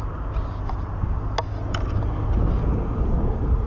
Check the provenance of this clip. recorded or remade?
recorded